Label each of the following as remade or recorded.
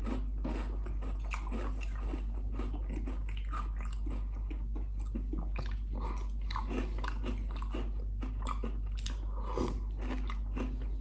recorded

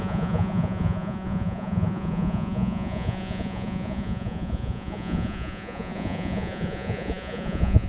remade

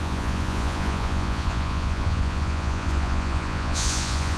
remade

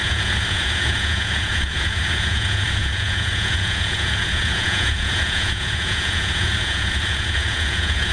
remade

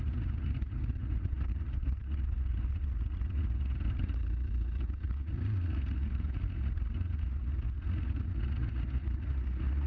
remade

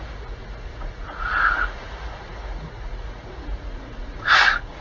remade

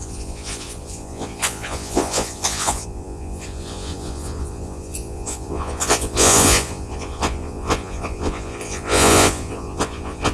remade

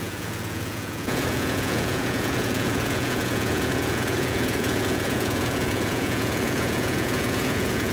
remade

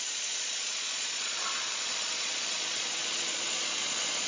remade